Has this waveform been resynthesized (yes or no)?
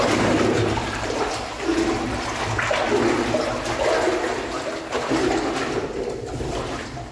no